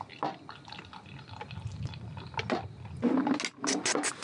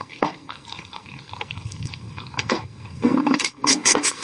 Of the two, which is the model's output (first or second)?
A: second